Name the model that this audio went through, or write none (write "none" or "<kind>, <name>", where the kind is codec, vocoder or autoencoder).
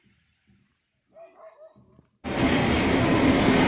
none